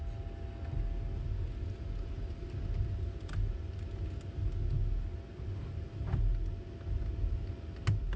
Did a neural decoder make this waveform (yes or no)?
no